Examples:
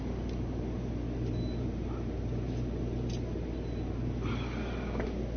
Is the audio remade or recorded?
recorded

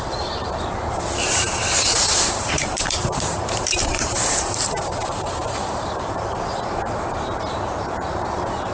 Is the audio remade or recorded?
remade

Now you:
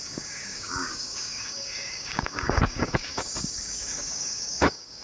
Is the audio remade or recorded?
remade